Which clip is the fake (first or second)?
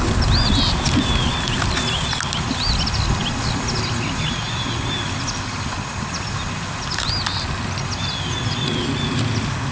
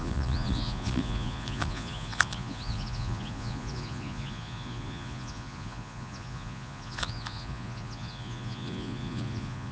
second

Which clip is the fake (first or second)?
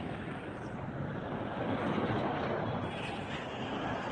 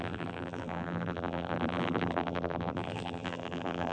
second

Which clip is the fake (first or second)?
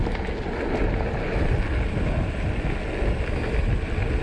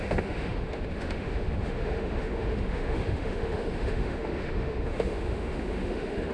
second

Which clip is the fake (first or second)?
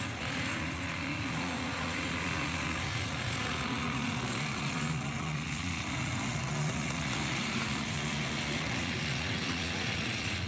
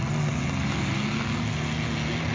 first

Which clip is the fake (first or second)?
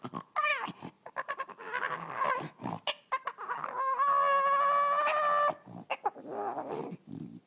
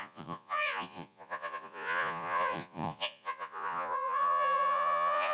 second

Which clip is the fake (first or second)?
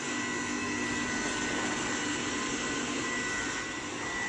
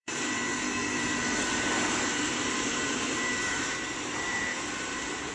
second